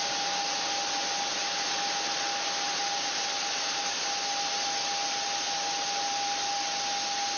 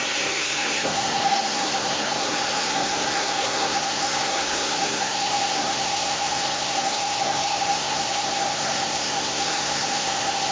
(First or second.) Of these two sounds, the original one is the first